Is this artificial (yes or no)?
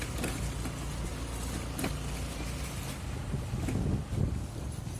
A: no